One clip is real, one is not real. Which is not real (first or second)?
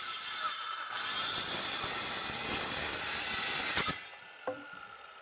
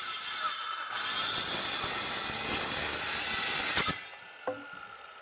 first